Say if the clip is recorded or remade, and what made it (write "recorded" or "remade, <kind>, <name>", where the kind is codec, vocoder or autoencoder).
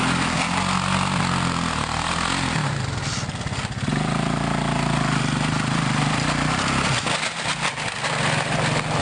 recorded